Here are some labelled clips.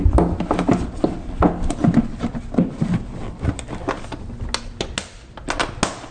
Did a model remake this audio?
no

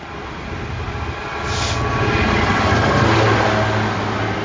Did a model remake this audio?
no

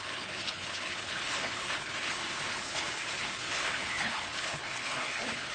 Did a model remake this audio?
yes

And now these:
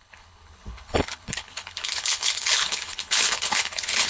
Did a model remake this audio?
yes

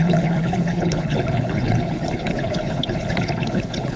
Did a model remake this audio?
yes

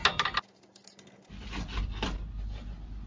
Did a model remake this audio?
no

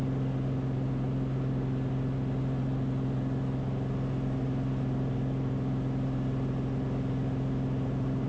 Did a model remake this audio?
no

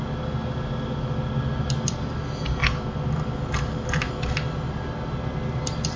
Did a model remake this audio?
no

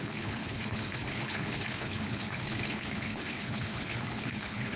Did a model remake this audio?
yes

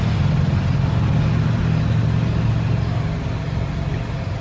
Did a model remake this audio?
no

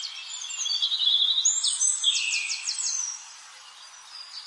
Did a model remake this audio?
no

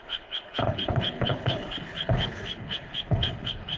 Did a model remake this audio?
yes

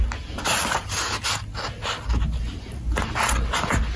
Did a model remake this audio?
no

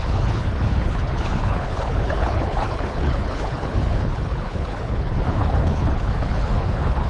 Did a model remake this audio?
yes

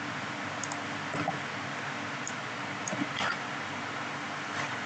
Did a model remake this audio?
no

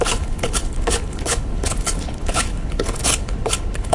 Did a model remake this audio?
yes